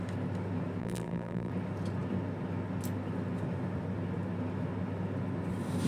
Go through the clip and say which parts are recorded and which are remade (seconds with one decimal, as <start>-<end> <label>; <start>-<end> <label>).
0.0-0.8 recorded; 0.8-1.5 remade; 1.5-5.9 recorded